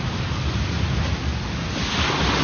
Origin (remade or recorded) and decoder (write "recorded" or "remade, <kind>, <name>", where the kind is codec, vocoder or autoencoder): recorded